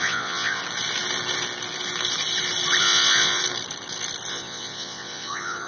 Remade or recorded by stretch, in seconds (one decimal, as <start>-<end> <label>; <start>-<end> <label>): 0.0-0.6 remade; 0.6-2.8 recorded; 2.8-3.4 remade; 3.4-4.3 recorded; 4.3-5.7 remade